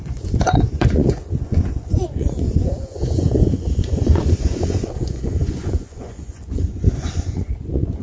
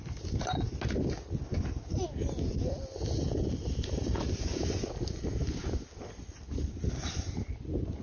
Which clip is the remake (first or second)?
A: first